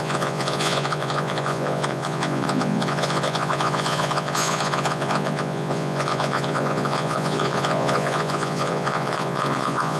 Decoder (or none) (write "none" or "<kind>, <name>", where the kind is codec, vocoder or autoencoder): vocoder, Vocos